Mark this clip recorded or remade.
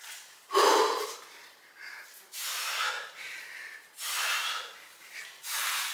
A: recorded